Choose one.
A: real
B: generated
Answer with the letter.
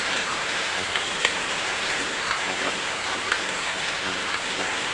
B